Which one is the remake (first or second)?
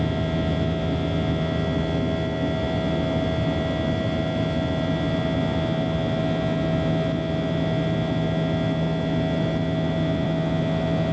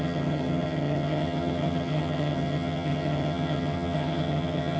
second